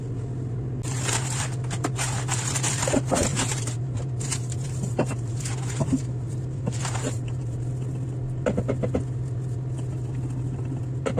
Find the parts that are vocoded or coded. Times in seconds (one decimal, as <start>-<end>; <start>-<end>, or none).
3.3-7.7